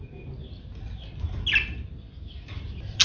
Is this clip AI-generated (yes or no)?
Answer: no